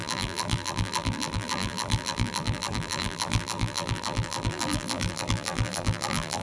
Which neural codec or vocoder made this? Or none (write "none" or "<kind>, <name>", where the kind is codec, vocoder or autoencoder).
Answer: vocoder, BigVGAN v2